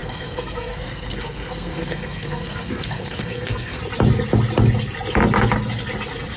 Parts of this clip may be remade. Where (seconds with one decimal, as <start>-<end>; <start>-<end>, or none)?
0.0-3.8